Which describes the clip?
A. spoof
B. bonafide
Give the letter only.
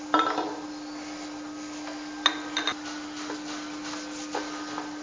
B